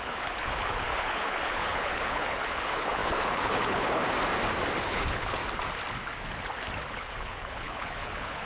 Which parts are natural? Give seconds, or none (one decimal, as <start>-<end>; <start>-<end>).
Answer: 4.0-4.8; 5.4-6.9